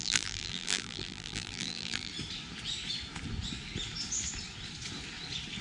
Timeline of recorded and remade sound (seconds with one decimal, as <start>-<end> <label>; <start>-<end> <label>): 0.0-2.1 remade; 2.1-5.6 recorded